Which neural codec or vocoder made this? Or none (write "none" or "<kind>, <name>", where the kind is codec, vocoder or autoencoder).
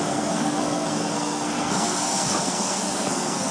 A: codec, SNAC